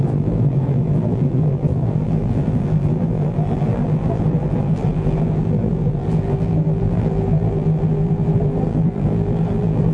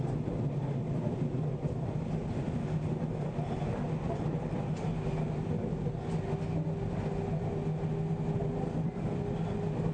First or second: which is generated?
first